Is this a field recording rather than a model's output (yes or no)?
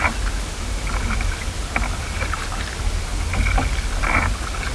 yes